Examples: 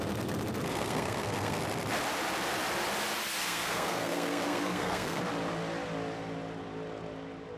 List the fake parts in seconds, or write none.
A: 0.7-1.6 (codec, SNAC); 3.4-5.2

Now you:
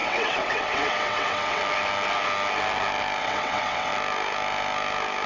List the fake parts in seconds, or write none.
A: 0.0-1.6 (vocoder, WaveNeXt); 3.2-3.9

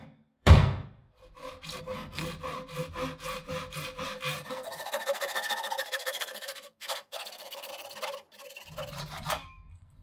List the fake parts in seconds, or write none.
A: 0.0-1.2 (codec, SNAC); 1.8-2.2; 4.5-7.7; 9.3-10.0

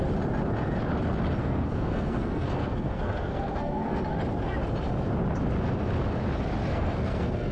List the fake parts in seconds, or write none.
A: 1.4-4.0 (codec, SNAC); 6.7-7.5

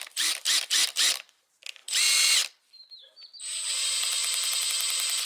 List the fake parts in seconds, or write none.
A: none

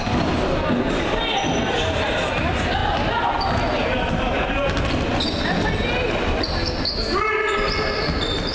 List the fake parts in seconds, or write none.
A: none

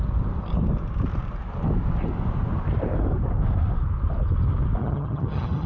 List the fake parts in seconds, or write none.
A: 4.8-5.7 (vocoder, HiFi-GAN)

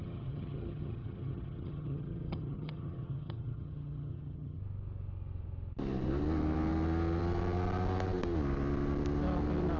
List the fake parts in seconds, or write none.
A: 0.0-4.6 (vocoder, HiFi-GAN)